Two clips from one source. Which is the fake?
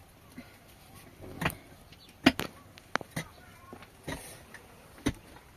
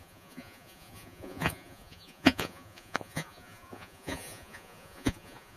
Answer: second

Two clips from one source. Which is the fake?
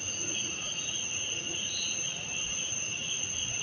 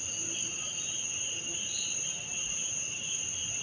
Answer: first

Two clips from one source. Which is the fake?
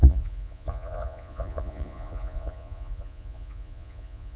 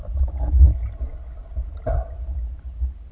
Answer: first